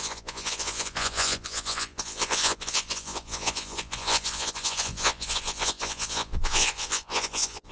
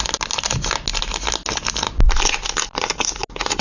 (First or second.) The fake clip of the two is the first